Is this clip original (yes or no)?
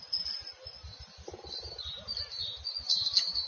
yes